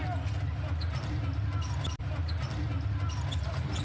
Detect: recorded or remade recorded